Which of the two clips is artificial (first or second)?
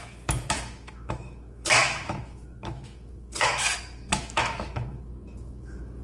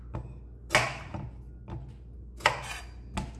first